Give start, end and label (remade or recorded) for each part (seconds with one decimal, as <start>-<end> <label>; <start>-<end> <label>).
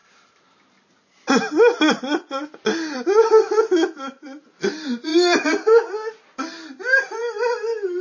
0.0-8.0 recorded